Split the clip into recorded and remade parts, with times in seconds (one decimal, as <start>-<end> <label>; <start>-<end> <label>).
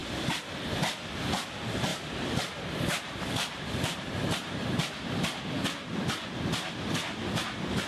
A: 0.0-1.9 recorded; 1.9-5.4 remade; 5.4-7.9 recorded